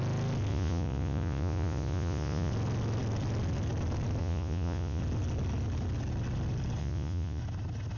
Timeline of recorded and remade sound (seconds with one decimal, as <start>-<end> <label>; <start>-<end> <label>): 0.0-0.5 recorded; 0.5-2.5 remade; 2.5-4.2 recorded; 4.2-5.0 remade; 5.0-6.8 recorded; 6.8-7.4 remade; 7.4-8.0 recorded